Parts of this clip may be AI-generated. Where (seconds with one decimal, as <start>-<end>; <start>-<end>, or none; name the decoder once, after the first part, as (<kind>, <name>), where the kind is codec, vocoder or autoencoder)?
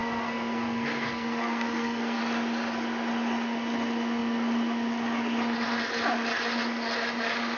0.0-2.2 (codec, SNAC)